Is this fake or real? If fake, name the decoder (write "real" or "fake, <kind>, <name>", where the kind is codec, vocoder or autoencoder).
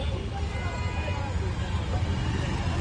real